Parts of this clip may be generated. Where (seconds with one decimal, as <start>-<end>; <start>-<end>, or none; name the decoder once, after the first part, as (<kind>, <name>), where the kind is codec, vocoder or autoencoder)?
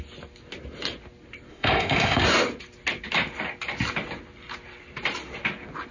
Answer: 1.5-2.2 (autoencoder, DAC-VAE)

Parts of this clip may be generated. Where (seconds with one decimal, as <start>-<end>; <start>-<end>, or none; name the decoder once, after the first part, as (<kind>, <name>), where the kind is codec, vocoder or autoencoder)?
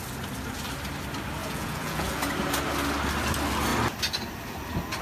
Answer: 1.4-2.3 (vocoder, Vocos)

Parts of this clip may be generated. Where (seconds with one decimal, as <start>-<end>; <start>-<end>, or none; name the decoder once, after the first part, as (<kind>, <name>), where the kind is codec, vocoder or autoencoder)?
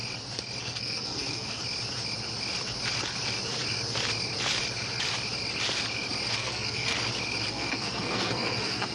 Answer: 0.6-1.6 (codec, SNAC); 6.3-6.9; 7.5-8.9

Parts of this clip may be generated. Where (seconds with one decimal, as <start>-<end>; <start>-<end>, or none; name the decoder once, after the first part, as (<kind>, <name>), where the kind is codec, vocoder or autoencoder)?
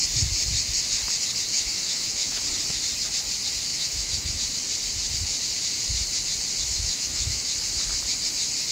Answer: 1.5-2.4 (autoencoder, DAC-VAE); 3.7-4.3; 6.7-7.4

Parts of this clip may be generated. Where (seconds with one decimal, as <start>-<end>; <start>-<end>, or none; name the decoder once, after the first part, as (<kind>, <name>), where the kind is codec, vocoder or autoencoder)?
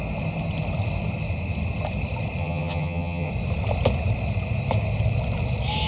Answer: 2.4-3.3 (vocoder, HiFi-GAN)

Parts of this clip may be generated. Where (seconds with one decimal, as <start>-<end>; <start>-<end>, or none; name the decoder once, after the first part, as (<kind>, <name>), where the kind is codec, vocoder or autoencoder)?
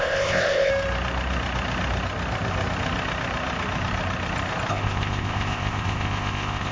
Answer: 0.0-0.7 (codec, ZipCodec); 4.7-6.7